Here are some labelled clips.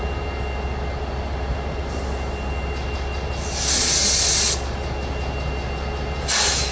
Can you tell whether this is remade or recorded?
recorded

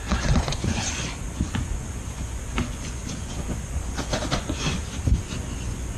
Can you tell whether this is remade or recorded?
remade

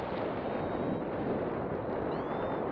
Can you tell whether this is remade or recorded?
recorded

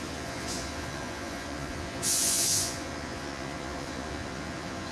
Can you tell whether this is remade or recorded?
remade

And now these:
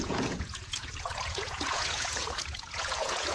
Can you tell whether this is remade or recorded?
remade